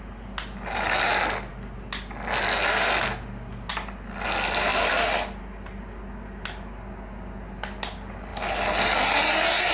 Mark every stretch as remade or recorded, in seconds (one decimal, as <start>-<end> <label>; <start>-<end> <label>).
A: 0.0-9.7 recorded